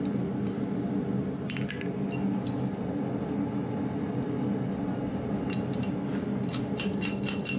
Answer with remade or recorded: recorded